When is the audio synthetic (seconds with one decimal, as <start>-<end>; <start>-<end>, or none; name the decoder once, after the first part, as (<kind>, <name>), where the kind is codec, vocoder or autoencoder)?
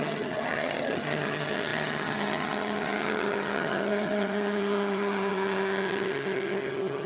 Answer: 0.0-7.1 (vocoder, HiFi-GAN)